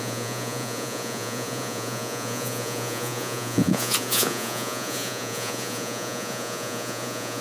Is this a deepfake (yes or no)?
yes